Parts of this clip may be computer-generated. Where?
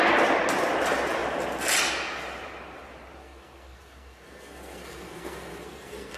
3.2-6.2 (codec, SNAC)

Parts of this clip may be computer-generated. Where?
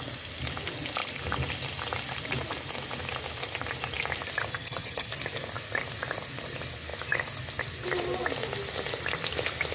4.5-5.1 (vocoder, HiFi-GAN)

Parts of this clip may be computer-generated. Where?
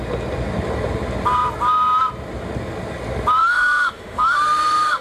3.4-5.0 (autoencoder, DAC-VAE)